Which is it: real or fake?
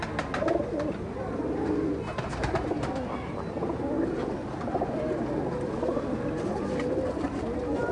real